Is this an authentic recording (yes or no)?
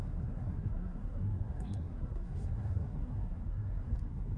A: no